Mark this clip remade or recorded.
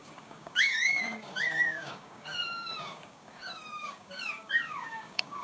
remade